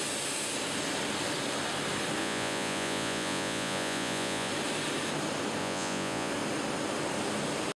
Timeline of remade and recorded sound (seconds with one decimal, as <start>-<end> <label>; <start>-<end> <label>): 0.0-2.2 recorded; 2.2-4.5 remade; 4.5-5.6 recorded; 5.6-6.3 remade; 6.3-7.8 recorded